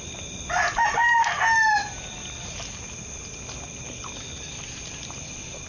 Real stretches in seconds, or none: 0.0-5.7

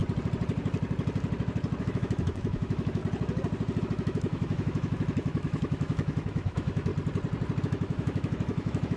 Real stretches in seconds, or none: 0.0-1.8; 3.0-3.8; 6.9-7.6

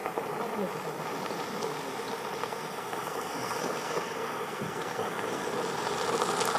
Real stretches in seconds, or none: 0.0-2.4; 5.4-6.6

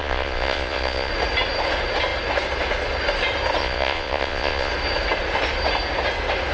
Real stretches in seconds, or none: 1.1-3.6; 4.7-6.5

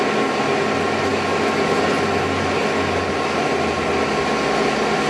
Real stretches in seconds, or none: 0.0-5.1